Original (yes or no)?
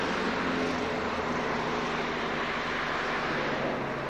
yes